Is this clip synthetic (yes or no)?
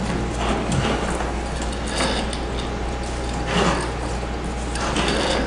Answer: no